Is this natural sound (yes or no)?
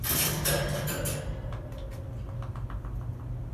yes